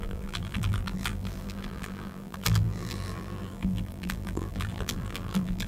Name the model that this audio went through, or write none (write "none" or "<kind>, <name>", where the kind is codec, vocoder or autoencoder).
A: vocoder, BigVGAN v2